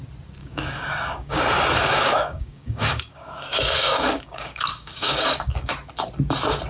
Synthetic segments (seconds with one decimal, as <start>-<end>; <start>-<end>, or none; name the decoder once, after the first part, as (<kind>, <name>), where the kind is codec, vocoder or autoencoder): 0.4-1.4 (codec, DAC); 1.8-5.7